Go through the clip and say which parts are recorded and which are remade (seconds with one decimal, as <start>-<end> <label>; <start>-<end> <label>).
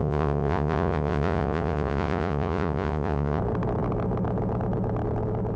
0.0-3.4 remade; 3.4-5.6 recorded